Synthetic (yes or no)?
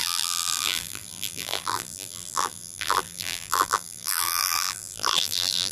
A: yes